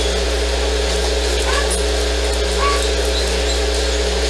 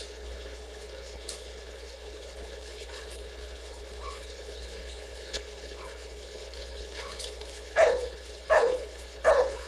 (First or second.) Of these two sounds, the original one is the first